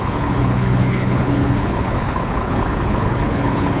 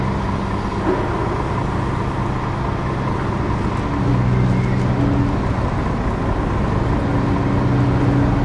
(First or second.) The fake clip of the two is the first